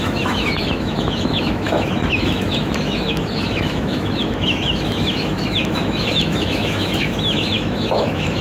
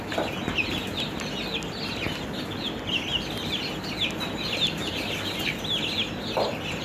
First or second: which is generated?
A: first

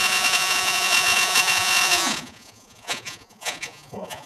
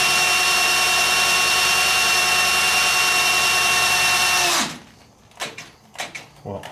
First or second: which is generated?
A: first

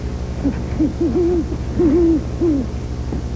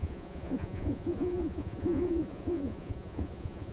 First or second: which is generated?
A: second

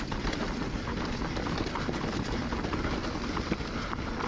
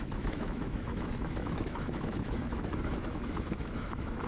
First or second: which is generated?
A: second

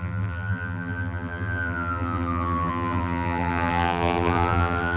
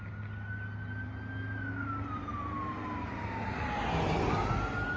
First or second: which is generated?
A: first